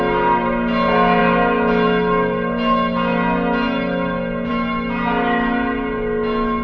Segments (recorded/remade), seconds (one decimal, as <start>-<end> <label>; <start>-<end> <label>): 0.0-6.6 recorded